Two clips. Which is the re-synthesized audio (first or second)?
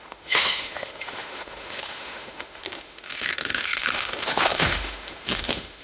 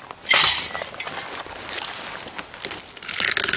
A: first